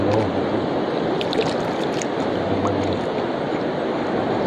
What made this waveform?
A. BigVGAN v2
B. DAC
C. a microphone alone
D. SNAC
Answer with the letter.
C